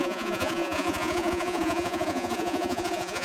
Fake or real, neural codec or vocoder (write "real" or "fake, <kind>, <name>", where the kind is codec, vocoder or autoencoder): fake, vocoder, Vocos